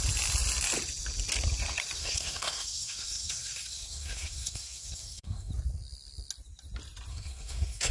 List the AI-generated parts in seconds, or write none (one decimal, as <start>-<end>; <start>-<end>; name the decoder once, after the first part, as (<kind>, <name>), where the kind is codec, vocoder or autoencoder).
2.0-5.5 (codec, SNAC); 7.1-7.9